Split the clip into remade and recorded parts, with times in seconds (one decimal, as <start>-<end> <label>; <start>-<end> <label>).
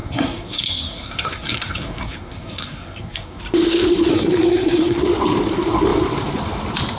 0.0-3.4 remade; 3.4-4.1 recorded; 4.1-5.0 remade; 5.0-7.0 recorded